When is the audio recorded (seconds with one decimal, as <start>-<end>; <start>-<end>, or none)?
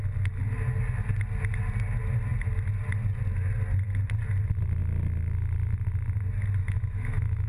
0.0-6.6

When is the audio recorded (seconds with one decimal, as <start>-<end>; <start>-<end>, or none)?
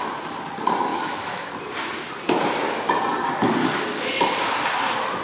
0.0-0.9; 1.5-5.2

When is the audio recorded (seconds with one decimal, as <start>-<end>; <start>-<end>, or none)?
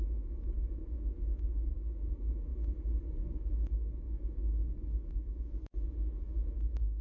2.5-3.2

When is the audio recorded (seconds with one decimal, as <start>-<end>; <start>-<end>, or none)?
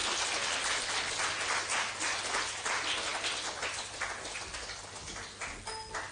0.0-6.1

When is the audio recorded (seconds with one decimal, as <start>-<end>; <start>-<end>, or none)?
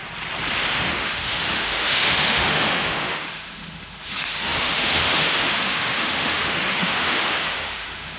0.0-0.7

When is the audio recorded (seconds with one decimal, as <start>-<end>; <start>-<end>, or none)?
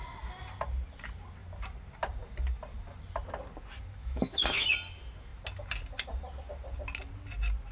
0.0-4.0; 4.7-7.7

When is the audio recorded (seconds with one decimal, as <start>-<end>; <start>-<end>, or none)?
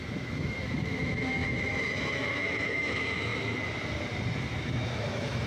3.3-4.6